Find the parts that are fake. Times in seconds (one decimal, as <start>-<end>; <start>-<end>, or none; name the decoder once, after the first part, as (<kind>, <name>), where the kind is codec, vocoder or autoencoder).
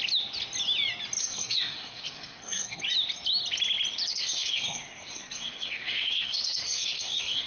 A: 1.2-2.8 (codec, SNAC); 4.1-7.5